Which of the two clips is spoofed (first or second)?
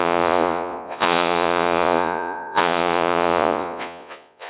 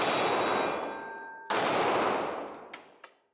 first